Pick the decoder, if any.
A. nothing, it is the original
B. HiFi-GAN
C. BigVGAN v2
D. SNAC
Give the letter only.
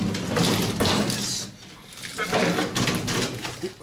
A